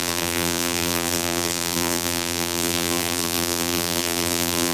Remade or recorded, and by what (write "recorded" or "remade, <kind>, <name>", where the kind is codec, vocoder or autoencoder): remade, vocoder, BigVGAN v2